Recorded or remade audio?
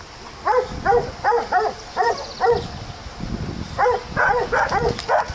recorded